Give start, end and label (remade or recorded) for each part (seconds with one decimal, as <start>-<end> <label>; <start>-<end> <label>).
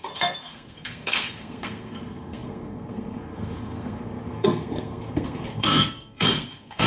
0.0-6.9 remade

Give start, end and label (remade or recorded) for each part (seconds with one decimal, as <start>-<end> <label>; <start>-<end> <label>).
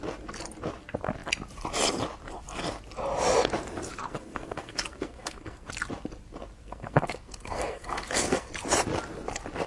0.0-3.9 recorded; 3.9-5.7 remade; 5.7-6.6 recorded; 6.6-8.5 remade; 8.5-9.7 recorded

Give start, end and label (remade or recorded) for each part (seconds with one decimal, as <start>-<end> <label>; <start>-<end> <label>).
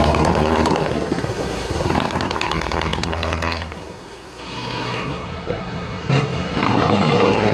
0.0-7.5 remade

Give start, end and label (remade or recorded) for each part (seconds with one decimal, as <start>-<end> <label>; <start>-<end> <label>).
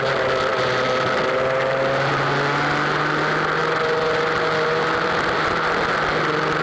0.0-6.6 recorded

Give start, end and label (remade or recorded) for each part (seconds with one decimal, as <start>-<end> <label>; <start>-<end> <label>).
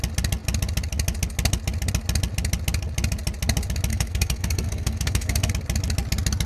0.0-3.9 recorded; 3.9-5.5 remade; 5.5-6.5 recorded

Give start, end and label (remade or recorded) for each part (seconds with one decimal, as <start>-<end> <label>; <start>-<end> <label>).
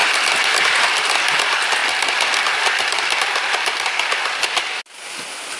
0.0-5.6 recorded